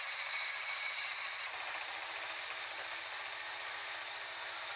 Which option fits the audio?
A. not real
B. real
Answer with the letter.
B